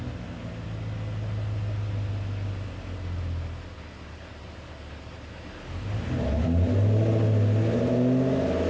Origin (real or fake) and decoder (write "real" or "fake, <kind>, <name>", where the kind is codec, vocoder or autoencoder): real